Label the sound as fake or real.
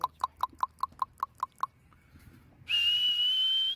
real